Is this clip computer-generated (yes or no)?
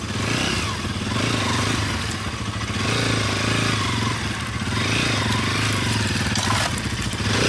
no